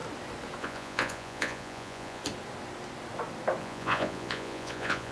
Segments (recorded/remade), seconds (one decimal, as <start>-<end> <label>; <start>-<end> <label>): 0.0-0.6 recorded; 0.6-2.2 remade; 2.2-3.6 recorded; 3.6-5.1 remade